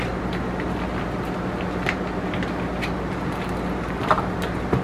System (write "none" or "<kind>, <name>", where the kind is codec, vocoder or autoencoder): none